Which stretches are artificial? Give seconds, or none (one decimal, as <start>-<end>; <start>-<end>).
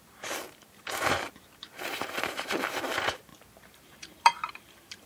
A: 0.0-5.1